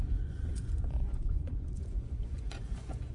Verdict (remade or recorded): remade